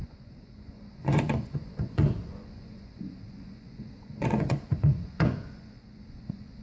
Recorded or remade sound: remade